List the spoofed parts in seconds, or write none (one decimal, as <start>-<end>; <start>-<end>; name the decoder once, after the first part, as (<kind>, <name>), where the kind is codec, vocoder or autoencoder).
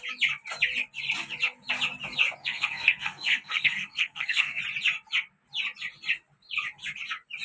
2.4-4.6 (codec, SNAC)